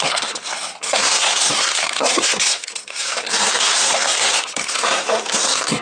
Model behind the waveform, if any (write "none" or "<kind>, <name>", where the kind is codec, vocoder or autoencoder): codec, SNAC